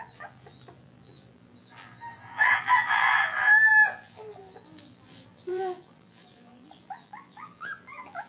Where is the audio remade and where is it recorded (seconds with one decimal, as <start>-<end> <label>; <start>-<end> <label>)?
0.0-8.3 remade